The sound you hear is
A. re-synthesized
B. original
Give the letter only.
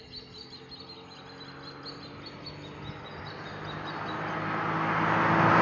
B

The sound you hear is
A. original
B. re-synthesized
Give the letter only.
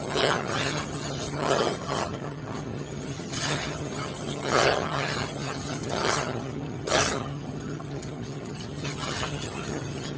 B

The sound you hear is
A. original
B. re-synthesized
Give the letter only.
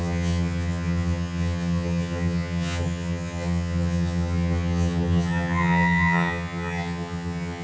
B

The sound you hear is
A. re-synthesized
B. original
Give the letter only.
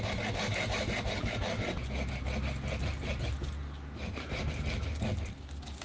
B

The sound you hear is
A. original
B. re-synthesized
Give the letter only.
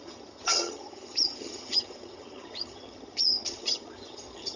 B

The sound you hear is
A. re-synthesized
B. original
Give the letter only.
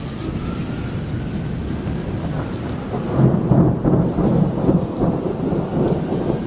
B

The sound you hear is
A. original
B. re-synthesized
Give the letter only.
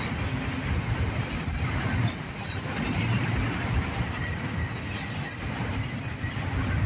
A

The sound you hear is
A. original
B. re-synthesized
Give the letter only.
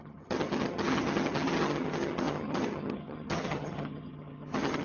B